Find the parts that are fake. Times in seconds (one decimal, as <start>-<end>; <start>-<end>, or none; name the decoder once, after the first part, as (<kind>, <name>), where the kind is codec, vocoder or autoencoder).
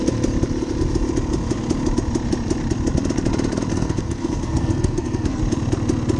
3.7-5.4 (codec, SNAC)